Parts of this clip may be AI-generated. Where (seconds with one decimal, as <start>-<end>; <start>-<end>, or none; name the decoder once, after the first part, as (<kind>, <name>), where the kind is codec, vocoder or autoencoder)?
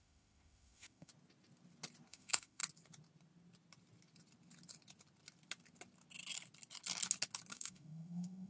0.0-1.1 (autoencoder, DAC-VAE); 2.1-2.6; 7.5-8.5